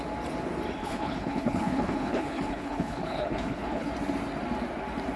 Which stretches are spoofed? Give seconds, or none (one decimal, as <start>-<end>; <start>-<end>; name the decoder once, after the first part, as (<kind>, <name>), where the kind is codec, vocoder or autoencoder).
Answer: 0.8-3.9 (codec, HILCodec)